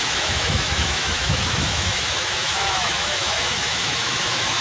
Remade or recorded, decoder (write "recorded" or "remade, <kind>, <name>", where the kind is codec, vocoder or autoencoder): remade, autoencoder, DAC-VAE